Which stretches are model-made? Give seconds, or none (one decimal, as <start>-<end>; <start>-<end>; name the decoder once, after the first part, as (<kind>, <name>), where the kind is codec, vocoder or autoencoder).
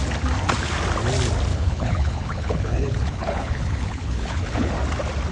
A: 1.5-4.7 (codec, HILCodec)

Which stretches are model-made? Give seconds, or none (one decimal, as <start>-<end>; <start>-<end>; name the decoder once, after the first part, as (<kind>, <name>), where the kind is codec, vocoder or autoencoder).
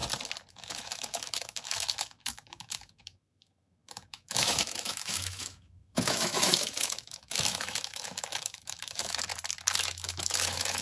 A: 0.5-9.3 (autoencoder, DAC-VAE); 9.8-10.8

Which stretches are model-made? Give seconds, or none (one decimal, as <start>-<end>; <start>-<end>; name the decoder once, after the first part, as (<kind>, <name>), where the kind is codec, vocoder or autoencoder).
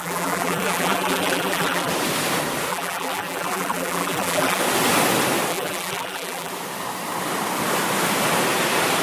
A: 0.0-1.9 (vocoder, BigVGAN v2); 2.7-4.6; 5.5-6.5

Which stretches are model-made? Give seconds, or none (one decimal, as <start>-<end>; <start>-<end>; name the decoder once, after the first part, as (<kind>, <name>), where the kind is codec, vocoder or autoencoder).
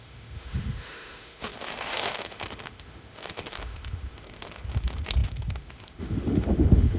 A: 0.0-7.0 (autoencoder, DAC-VAE)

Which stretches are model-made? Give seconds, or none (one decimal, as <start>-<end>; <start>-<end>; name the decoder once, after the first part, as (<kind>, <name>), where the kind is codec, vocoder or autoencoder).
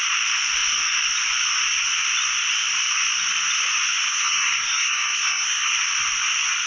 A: 4.1-5.8 (codec, SNAC)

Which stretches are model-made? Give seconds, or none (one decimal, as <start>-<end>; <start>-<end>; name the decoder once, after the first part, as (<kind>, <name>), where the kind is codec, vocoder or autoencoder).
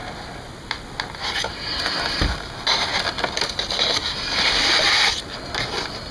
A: none